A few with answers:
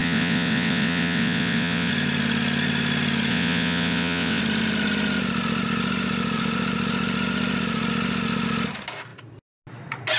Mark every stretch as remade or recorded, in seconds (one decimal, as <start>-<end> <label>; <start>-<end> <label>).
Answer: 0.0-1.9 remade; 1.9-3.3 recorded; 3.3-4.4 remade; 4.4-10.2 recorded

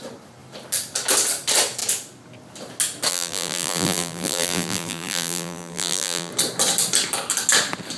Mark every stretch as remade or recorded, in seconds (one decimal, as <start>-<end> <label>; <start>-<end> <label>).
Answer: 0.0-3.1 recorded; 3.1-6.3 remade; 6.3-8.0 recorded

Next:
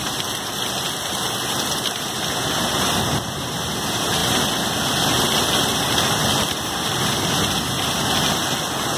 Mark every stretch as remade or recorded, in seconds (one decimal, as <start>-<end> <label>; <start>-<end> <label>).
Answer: 0.0-9.0 recorded

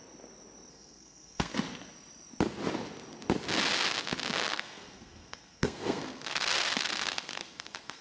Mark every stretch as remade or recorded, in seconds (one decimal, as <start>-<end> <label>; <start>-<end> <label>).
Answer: 0.0-0.7 recorded; 0.7-1.5 remade; 1.5-4.5 recorded; 4.5-8.0 remade